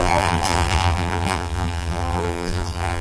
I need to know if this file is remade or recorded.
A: remade